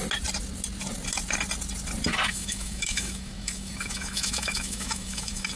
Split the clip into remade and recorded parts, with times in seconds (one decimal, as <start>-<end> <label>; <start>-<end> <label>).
0.0-2.3 recorded; 2.3-5.6 remade